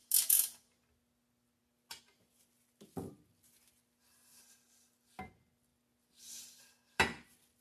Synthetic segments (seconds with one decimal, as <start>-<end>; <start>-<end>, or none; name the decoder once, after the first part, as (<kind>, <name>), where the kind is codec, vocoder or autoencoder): none